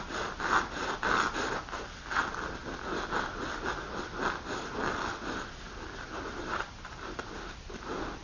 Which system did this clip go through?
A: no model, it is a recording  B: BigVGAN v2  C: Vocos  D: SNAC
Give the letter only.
A